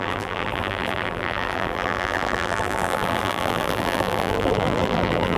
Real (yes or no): no